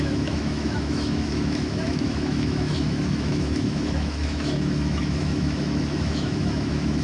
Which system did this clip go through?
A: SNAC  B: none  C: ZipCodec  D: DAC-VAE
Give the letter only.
D